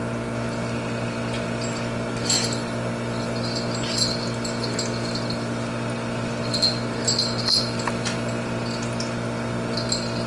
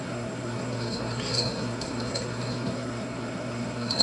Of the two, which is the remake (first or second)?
second